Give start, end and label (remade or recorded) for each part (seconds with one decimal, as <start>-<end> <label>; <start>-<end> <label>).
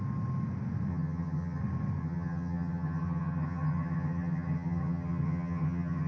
0.0-0.9 recorded; 0.9-1.6 remade; 1.6-2.0 recorded; 2.0-6.1 remade